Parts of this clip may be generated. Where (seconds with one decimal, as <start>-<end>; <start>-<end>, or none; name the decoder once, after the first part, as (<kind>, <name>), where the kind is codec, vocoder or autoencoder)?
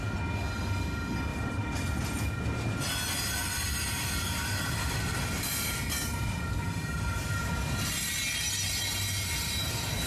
1.3-2.4 (vocoder, BigVGAN v2); 3.4-7.4